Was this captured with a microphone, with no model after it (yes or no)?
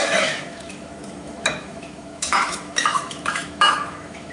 no